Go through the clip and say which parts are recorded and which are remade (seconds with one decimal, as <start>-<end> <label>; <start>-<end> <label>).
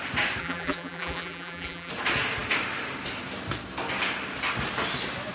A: 0.0-0.4 recorded; 0.4-1.9 remade; 1.9-5.3 recorded